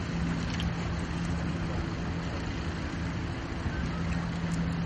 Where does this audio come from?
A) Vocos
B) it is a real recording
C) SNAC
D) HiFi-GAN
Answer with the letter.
B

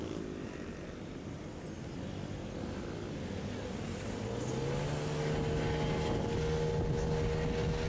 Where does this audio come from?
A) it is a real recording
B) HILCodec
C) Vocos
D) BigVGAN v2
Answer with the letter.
A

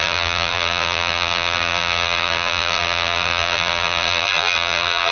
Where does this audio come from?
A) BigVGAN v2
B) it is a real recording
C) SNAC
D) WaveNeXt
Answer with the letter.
A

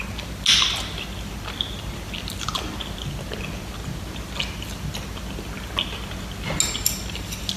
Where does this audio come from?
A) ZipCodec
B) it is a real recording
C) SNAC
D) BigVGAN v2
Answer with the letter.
B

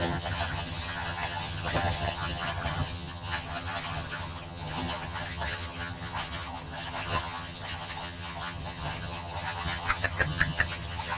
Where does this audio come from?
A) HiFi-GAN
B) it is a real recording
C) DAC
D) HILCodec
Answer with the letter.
A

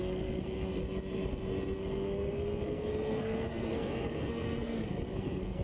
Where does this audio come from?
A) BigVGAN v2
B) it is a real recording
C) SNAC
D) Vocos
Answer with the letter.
C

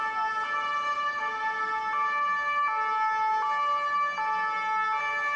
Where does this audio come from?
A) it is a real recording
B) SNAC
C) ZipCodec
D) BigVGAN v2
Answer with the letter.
A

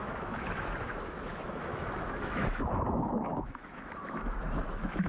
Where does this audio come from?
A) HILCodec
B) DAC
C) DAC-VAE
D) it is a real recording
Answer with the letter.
C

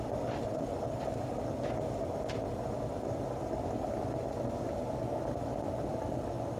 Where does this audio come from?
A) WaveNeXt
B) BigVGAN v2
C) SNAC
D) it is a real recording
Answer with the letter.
B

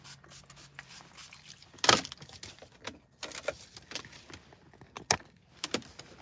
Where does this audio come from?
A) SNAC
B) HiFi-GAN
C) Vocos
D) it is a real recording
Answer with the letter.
D